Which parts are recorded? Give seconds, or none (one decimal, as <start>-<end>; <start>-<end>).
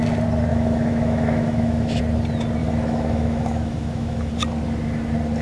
0.0-0.5; 2.0-2.6; 4.3-5.4